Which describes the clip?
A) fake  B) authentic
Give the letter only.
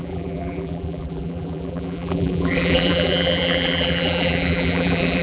A